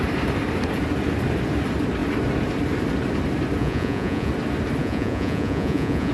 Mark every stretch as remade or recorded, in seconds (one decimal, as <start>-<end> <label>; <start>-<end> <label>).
0.0-3.6 recorded; 3.6-4.3 remade; 4.3-4.8 recorded; 4.8-6.1 remade